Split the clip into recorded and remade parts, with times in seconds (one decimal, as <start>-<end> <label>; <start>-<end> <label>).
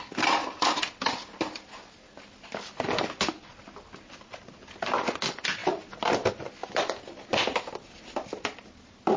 0.0-9.2 recorded